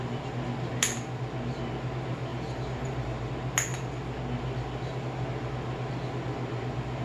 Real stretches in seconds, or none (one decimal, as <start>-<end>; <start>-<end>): 0.0-2.3; 3.3-7.0